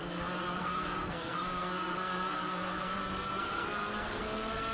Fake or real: fake